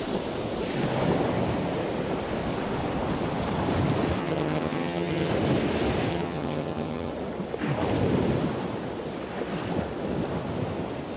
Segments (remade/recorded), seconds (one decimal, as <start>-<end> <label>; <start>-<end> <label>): 0.0-4.2 recorded; 4.2-5.3 remade; 5.3-6.1 recorded; 6.1-7.1 remade; 7.1-11.2 recorded